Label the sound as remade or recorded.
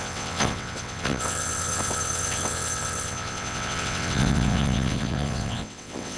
remade